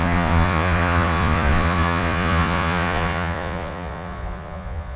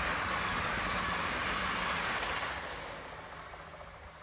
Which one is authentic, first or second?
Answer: second